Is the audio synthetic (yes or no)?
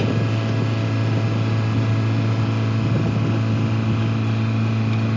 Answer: no